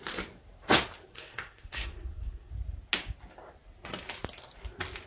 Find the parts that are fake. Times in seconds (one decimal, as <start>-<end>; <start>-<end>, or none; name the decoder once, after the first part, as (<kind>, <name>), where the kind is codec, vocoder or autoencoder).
1.1-2.5 (codec, SNAC)